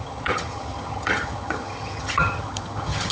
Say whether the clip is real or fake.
fake